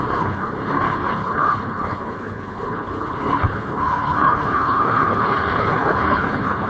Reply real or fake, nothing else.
fake